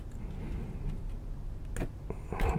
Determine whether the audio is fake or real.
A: real